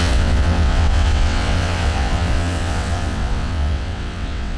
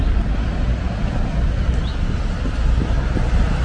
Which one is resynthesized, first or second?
first